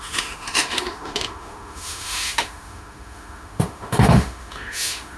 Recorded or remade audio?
remade